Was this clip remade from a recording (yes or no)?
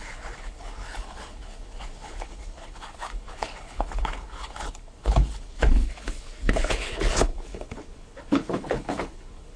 yes